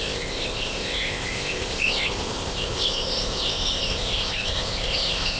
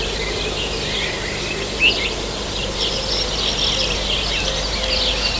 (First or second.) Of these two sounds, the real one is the second